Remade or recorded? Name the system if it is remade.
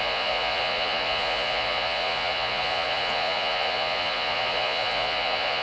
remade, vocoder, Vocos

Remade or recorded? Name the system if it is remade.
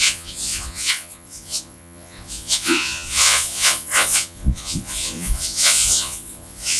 remade, vocoder, Vocos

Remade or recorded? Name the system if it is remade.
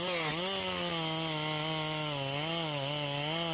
recorded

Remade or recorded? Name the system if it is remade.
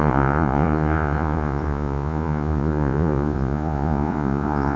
remade, vocoder, Vocos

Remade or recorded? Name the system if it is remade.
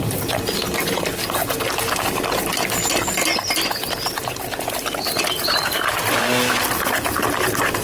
recorded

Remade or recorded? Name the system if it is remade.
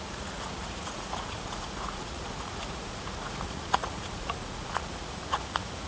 remade, vocoder, Vocos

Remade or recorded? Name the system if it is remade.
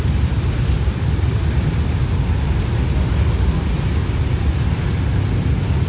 recorded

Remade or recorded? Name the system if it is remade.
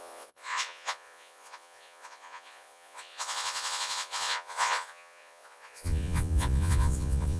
remade, vocoder, Vocos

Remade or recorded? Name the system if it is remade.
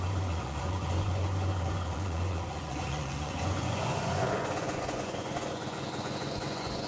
remade, vocoder, Vocos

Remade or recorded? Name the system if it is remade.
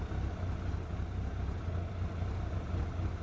recorded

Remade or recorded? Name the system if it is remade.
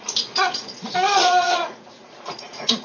remade, vocoder, Vocos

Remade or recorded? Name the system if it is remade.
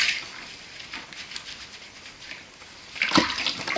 recorded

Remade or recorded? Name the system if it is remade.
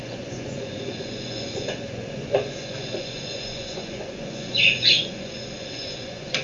remade, vocoder, Vocos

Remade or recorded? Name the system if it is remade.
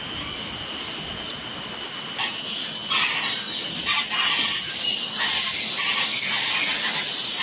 recorded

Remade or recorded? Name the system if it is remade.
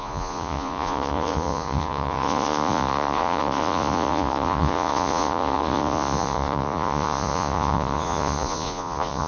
remade, vocoder, Vocos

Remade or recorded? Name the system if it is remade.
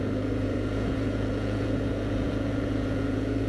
remade, vocoder, Vocos